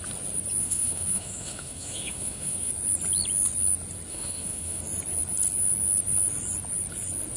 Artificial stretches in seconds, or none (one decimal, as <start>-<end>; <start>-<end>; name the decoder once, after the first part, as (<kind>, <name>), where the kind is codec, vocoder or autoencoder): 0.6-2.7 (autoencoder, DAC-VAE); 4.1-4.8